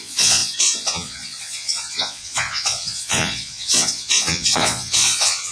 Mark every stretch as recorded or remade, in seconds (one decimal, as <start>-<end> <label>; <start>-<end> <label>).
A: 0.0-5.5 remade